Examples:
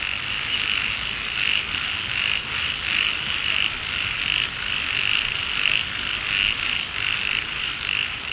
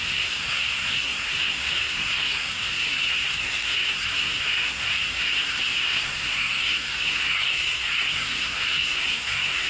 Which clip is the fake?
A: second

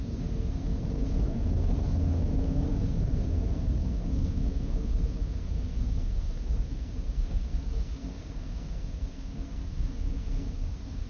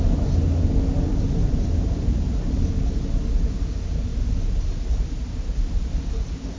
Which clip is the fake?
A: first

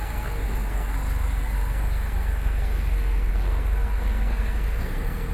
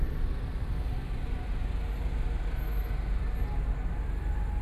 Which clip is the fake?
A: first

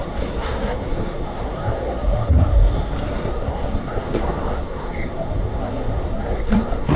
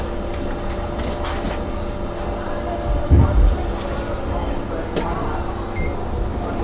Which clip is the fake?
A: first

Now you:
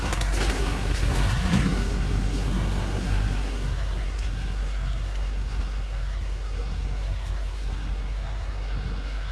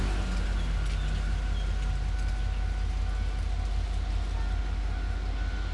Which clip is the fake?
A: first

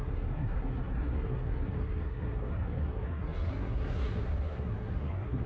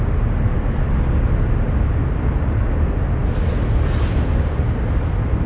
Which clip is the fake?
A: first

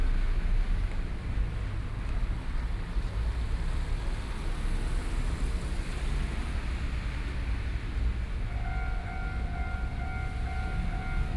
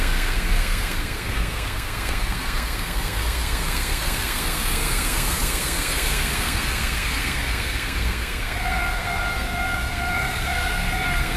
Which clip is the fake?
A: second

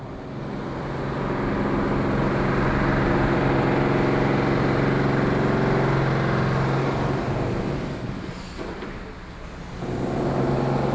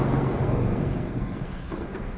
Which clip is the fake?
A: second